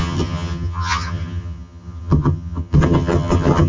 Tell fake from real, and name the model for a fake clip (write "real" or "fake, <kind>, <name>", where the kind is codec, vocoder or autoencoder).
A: fake, vocoder, HiFi-GAN